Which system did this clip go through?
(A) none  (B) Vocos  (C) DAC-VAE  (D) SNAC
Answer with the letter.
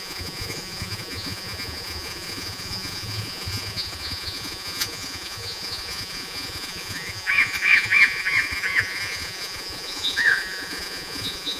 B